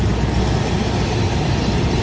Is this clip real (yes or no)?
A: yes